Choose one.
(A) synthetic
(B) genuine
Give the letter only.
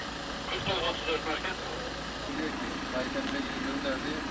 B